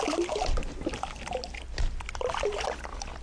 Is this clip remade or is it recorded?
recorded